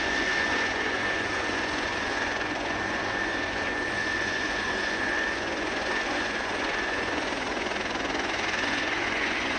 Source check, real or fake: fake